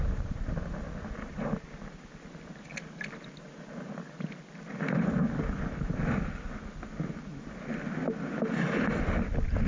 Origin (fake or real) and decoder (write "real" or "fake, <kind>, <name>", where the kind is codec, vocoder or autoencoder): real